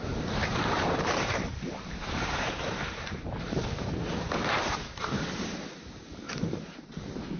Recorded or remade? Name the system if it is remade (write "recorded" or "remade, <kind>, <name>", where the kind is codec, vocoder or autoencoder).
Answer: remade, vocoder, BigVGAN v2